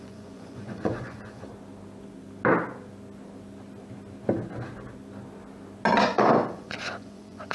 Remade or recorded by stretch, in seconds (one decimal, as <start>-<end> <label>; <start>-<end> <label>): 0.0-1.5 remade; 1.5-6.0 recorded; 6.0-7.5 remade